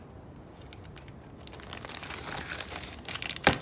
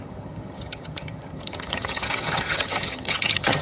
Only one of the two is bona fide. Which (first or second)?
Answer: first